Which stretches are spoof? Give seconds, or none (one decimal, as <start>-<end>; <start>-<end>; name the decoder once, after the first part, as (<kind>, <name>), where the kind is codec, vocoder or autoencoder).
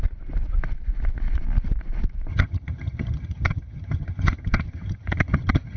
2.3-5.8 (vocoder, HiFi-GAN)